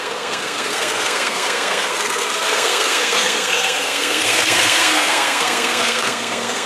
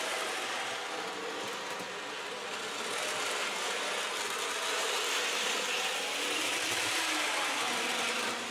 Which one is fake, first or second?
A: first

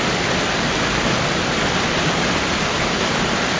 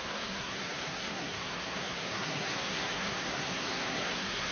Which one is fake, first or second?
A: second